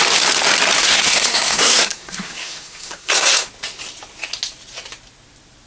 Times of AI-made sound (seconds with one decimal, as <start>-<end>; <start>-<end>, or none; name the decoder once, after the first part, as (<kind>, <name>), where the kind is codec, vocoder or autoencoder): 0.8-3.5 (codec, SNAC)